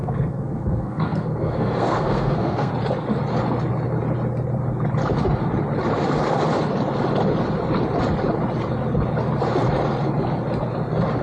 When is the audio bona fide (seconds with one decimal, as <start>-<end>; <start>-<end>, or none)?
2.7-11.2